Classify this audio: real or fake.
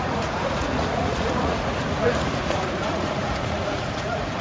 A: fake